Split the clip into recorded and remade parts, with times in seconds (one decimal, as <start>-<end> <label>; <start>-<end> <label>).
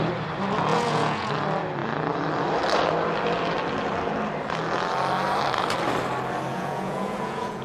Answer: 0.0-0.7 recorded; 0.7-1.3 remade; 1.3-6.5 recorded; 6.5-7.6 remade